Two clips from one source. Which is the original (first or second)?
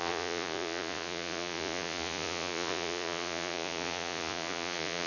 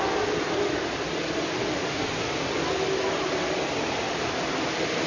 second